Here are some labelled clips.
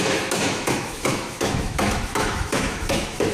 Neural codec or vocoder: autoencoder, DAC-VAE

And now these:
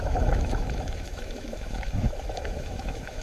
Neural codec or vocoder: autoencoder, DAC-VAE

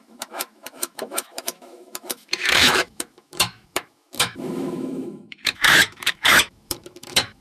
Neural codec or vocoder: autoencoder, DAC-VAE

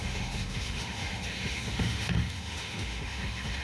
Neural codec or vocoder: autoencoder, DAC-VAE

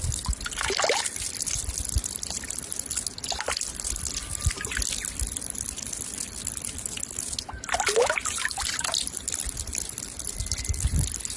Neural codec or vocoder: none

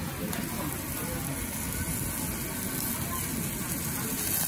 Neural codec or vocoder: none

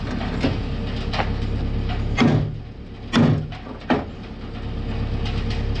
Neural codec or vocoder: none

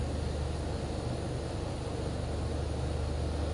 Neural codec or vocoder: none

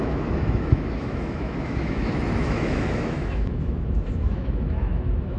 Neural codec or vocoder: autoencoder, DAC-VAE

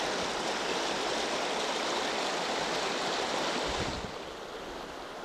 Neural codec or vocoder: none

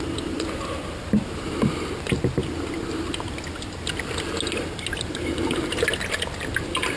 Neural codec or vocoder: none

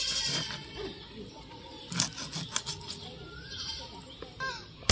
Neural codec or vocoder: none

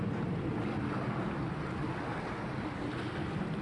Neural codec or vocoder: none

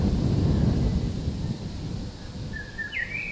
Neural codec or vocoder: none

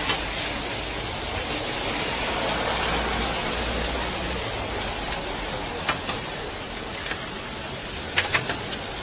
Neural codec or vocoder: none